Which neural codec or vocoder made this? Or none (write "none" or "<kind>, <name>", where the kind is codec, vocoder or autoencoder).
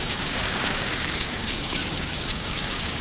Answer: codec, DAC